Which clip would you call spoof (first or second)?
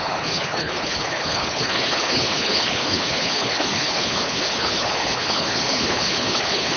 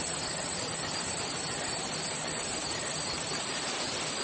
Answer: first